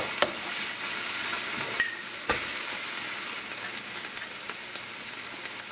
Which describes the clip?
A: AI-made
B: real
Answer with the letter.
B